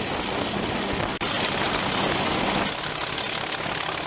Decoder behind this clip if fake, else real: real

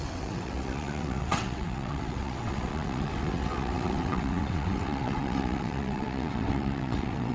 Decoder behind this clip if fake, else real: fake, vocoder, WaveNeXt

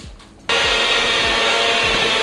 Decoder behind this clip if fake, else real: real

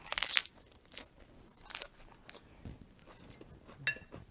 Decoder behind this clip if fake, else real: real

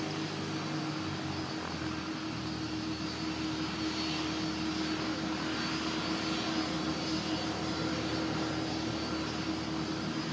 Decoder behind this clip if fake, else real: real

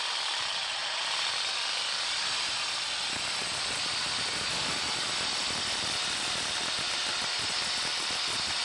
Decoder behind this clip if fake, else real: real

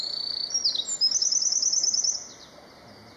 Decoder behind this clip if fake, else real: real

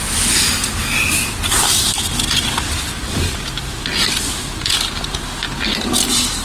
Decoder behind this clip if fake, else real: real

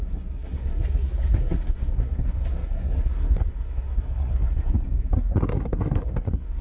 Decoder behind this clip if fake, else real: fake, codec, SNAC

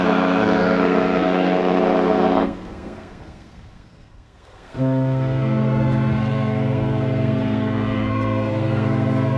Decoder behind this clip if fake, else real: fake, codec, SNAC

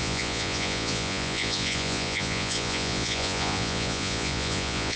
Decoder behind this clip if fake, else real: fake, vocoder, Vocos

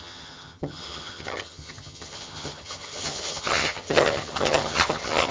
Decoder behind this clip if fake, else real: fake, vocoder, HiFi-GAN